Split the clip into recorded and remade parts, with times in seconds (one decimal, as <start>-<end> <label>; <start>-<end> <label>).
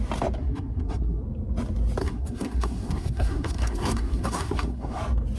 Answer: 0.0-0.4 recorded; 0.4-1.2 remade; 1.2-2.0 recorded; 2.0-5.0 remade; 5.0-5.4 recorded